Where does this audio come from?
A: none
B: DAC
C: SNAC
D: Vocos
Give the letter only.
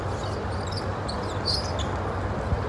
A